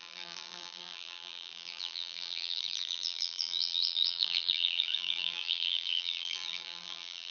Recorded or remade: remade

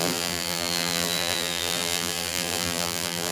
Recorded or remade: remade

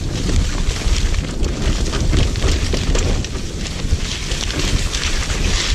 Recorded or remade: recorded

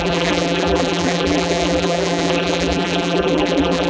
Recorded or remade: remade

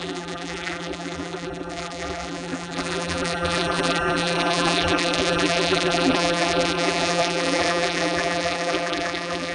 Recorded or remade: remade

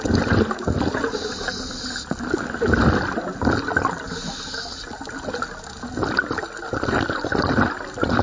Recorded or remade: recorded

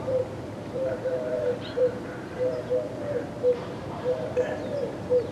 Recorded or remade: remade